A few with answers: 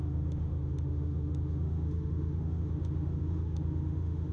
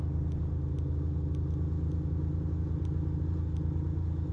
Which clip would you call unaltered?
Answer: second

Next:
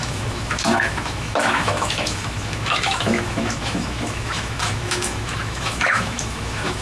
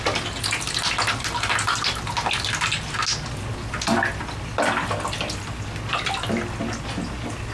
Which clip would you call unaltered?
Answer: second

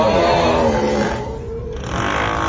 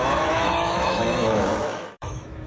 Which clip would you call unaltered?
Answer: first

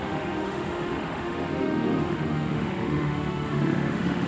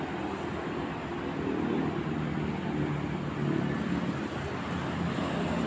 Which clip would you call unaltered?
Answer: second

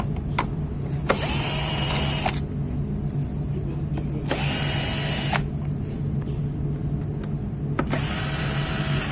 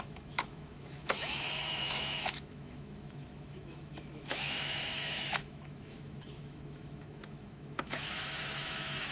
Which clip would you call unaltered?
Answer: first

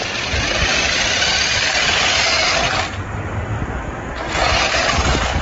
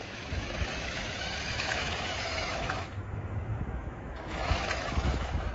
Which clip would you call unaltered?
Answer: first